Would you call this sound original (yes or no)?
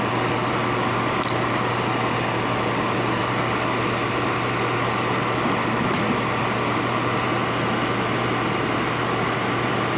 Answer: yes